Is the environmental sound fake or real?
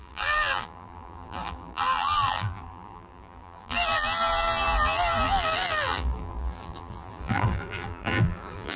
fake